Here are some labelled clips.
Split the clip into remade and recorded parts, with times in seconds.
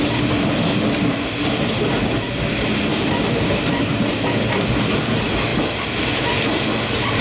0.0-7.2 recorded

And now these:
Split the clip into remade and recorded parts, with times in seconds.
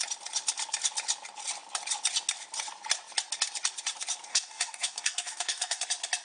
0.0-4.3 recorded; 4.3-5.8 remade; 5.8-6.2 recorded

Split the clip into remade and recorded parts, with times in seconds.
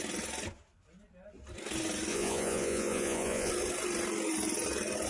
0.0-2.1 recorded; 2.1-3.5 remade; 3.5-5.1 recorded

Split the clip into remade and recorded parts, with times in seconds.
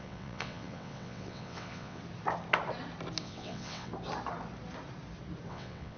0.0-2.0 remade; 2.0-3.2 recorded; 3.2-3.9 remade; 3.9-5.5 recorded; 5.5-6.0 remade